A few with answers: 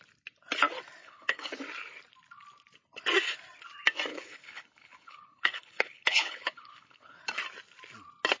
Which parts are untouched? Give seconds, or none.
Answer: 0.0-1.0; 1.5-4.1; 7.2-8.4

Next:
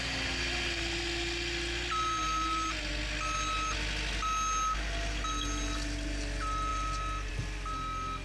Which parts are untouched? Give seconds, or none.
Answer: 0.0-8.2

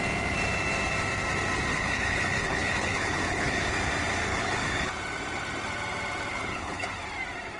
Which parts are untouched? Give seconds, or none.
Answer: 0.0-1.7; 3.7-4.3; 4.9-6.3; 6.9-7.6

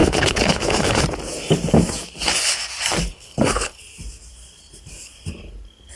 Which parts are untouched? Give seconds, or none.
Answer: 1.0-3.1; 3.8-6.0

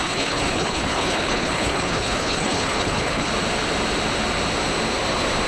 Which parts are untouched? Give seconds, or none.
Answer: 3.3-5.5

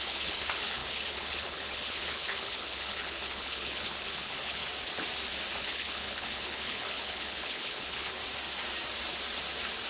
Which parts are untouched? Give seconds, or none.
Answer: 4.6-5.6; 8.2-9.9

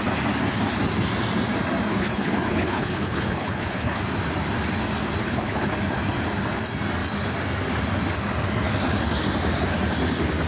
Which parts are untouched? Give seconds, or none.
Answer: 0.0-1.9; 4.0-5.2; 5.7-10.5